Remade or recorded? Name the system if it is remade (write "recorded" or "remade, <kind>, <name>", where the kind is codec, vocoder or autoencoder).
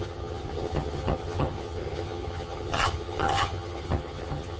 remade, vocoder, HiFi-GAN